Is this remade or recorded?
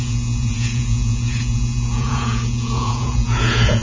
remade